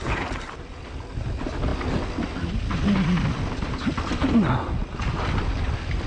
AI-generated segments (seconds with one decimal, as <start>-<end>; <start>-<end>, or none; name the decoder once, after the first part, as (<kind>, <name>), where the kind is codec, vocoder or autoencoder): none